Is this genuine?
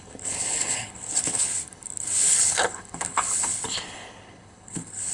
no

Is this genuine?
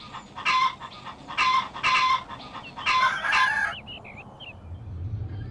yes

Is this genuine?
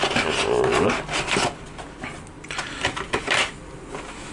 yes